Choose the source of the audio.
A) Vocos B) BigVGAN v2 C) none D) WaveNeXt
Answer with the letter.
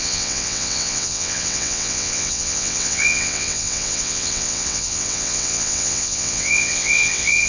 D